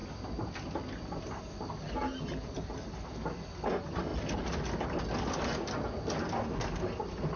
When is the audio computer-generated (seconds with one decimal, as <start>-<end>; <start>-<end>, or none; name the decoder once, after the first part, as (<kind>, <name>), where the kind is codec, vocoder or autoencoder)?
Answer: none